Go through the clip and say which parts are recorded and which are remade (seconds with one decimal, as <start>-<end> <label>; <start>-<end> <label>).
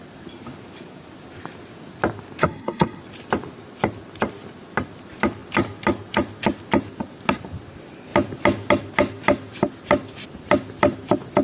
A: 0.0-2.4 recorded; 2.4-3.0 remade; 3.0-11.4 recorded